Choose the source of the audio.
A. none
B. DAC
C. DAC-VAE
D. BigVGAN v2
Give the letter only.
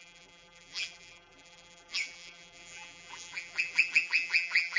D